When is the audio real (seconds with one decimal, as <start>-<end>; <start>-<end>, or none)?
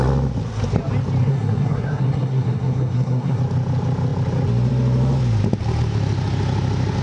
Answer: 0.0-1.2; 3.4-7.0